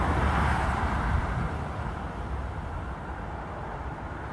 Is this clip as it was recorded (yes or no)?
yes